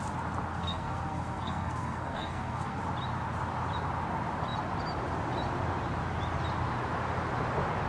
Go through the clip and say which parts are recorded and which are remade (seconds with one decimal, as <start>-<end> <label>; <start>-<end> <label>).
0.0-0.5 recorded; 0.5-2.8 remade; 2.8-7.9 recorded